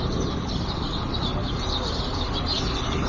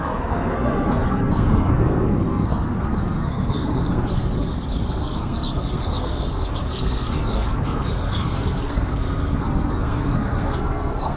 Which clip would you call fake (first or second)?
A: second